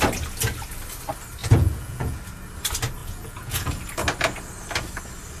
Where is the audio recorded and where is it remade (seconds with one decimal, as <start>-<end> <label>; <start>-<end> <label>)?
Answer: 0.0-1.4 recorded; 1.4-2.2 remade; 2.2-3.0 recorded; 3.0-3.8 remade; 3.8-5.4 recorded